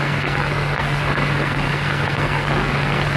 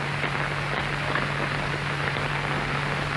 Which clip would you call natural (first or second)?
second